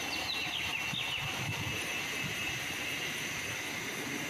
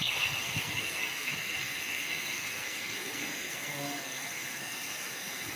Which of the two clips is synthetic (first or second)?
second